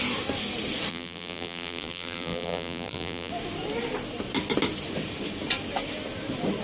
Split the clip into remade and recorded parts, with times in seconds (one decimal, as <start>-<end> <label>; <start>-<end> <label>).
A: 0.0-0.9 recorded; 0.9-3.3 remade; 3.3-6.6 recorded